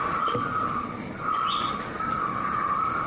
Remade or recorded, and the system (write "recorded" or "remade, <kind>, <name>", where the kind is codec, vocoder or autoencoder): recorded